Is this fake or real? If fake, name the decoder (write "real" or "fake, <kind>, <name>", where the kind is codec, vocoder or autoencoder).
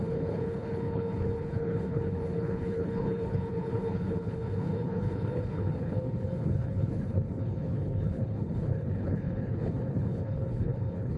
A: fake, codec, HILCodec